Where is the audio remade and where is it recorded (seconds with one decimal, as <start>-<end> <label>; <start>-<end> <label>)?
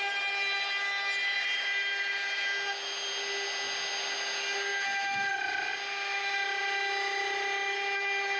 0.0-8.4 recorded